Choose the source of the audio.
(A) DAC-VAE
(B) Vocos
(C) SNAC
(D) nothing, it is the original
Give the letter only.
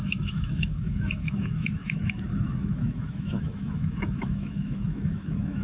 A